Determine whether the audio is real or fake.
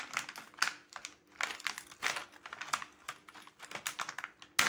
real